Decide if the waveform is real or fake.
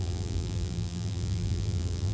fake